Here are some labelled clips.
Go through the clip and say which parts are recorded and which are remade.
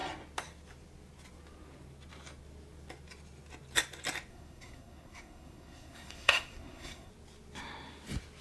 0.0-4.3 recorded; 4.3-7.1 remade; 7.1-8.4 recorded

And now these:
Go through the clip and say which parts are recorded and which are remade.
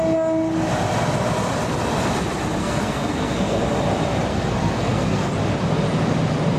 0.0-2.6 recorded; 2.6-3.6 remade; 3.6-4.3 recorded; 4.3-5.3 remade; 5.3-6.6 recorded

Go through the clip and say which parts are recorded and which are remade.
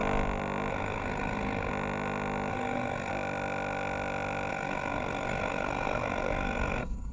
0.0-0.7 recorded; 0.7-1.7 remade; 1.7-2.5 recorded; 2.5-3.1 remade; 3.1-4.5 recorded; 4.5-7.1 remade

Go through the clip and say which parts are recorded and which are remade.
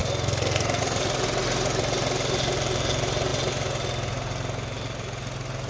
0.0-0.8 remade; 0.8-5.7 recorded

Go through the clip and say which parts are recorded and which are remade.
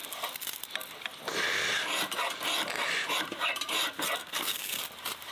0.0-4.2 recorded; 4.2-4.8 remade; 4.8-5.3 recorded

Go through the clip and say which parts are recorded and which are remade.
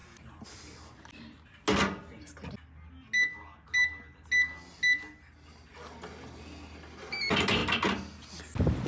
0.0-8.9 recorded